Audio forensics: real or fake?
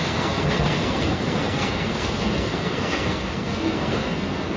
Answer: fake